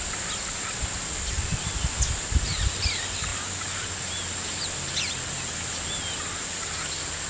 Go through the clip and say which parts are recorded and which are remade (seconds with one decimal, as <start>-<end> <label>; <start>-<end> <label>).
0.0-7.3 recorded